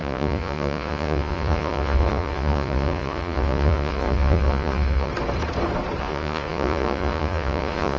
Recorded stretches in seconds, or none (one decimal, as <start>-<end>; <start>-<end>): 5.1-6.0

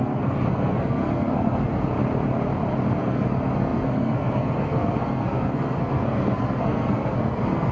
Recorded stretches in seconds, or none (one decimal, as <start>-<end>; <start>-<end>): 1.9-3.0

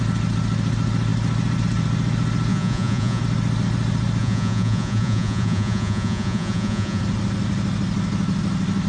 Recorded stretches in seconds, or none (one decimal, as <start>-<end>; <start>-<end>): 0.0-2.5; 3.2-4.2; 7.0-8.9

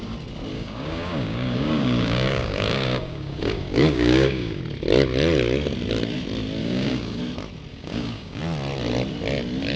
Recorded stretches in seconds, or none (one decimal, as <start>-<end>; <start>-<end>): 0.0-0.5; 4.6-6.6; 7.2-7.7; 8.4-9.8

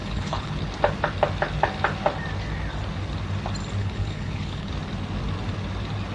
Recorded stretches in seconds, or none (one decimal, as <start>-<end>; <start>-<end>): 0.6-3.8; 4.7-6.1

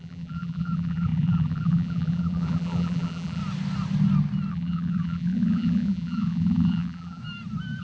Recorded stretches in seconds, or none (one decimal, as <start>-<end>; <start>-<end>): 3.4-4.5; 7.2-7.8

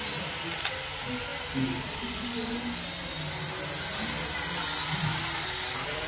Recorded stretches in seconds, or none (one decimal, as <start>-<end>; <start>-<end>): 0.0-6.1

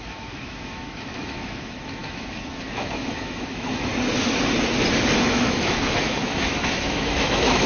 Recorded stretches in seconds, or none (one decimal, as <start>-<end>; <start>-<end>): 3.9-5.3